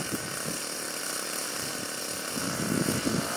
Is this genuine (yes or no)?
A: no